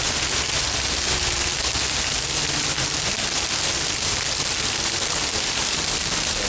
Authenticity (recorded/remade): recorded